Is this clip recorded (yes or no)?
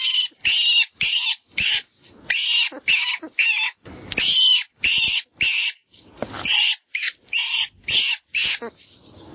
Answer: yes